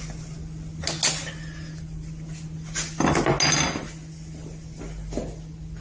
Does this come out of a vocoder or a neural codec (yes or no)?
no